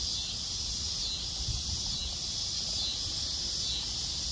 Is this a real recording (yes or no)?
yes